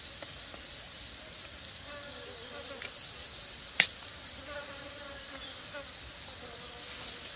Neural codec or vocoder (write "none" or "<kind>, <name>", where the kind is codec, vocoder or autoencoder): none